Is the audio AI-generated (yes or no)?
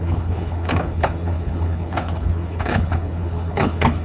yes